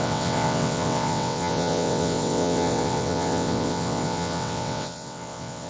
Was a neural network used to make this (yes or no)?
yes